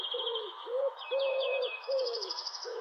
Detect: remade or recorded remade